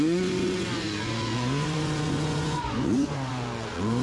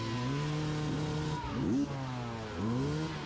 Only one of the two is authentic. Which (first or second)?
second